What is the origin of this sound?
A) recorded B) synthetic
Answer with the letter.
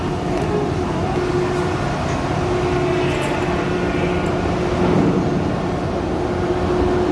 A